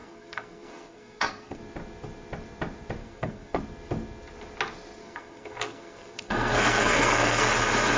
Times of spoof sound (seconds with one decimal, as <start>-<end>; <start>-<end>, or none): 0.0-1.6; 3.0-3.6; 5.0-7.5